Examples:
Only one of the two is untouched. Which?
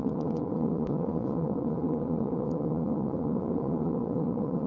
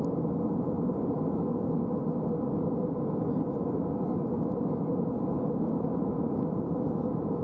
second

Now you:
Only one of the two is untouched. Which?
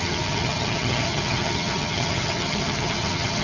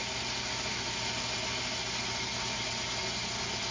second